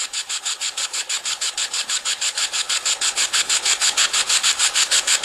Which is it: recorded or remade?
remade